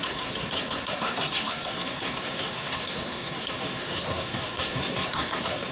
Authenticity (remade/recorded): remade